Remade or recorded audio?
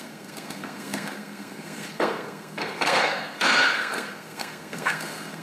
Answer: remade